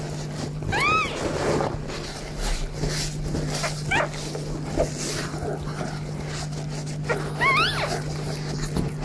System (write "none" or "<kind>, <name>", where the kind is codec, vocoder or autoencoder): none